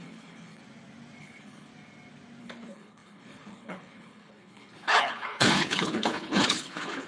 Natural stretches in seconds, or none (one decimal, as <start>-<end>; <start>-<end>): 0.6-1.2; 1.7-2.4

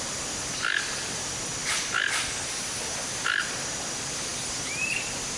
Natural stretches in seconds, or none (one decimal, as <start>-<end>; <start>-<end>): 0.0-5.4

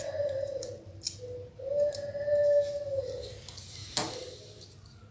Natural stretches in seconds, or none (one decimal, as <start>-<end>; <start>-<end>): 0.0-5.1

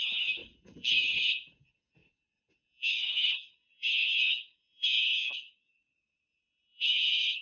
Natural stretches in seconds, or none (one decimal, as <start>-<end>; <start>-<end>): none

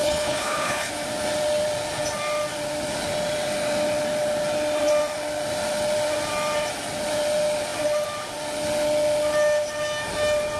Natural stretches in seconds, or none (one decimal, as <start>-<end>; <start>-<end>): 0.9-10.6